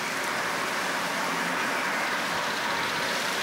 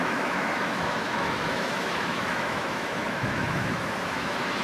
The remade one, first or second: second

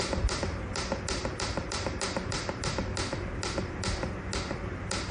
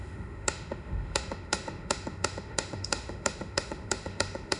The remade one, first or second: second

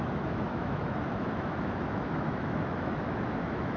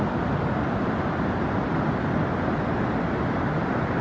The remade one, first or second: first